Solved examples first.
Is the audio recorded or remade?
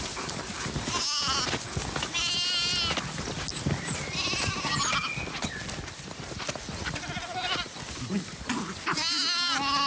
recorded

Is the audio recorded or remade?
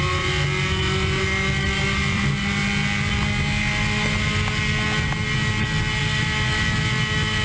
recorded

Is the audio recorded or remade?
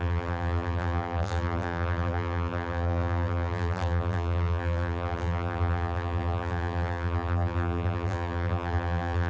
remade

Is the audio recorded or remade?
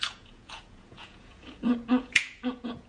remade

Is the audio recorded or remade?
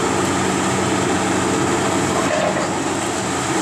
recorded